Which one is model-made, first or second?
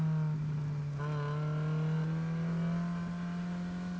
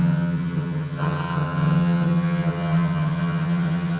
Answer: second